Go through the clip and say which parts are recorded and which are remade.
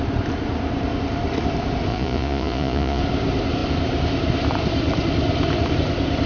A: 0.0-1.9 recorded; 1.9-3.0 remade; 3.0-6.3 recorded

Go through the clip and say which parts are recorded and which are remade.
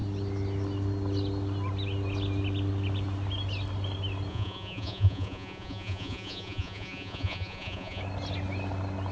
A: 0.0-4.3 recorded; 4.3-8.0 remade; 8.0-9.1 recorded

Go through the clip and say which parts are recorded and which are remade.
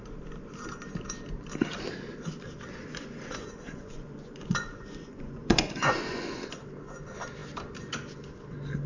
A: 0.0-2.8 recorded; 2.8-6.6 remade; 6.6-8.9 recorded